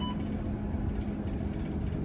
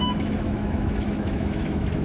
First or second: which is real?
first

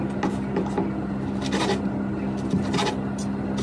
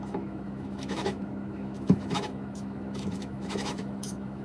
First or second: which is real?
first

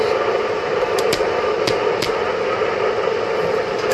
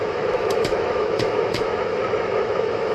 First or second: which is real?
first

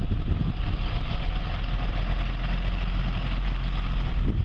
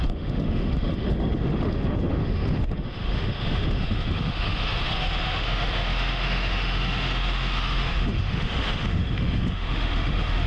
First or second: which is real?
first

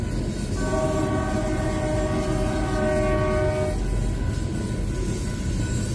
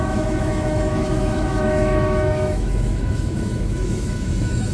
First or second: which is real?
first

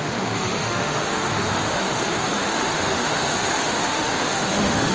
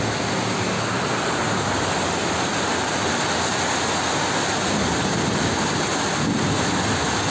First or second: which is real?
second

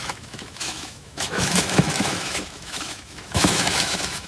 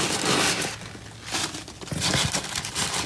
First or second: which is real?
second